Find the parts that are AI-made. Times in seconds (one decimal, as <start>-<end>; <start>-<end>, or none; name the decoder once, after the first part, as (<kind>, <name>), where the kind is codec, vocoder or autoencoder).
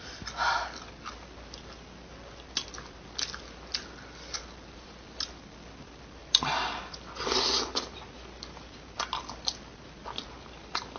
none